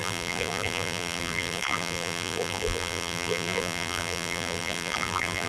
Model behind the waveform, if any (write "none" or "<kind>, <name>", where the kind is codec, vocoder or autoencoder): vocoder, BigVGAN v2